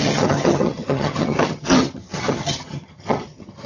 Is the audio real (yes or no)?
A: no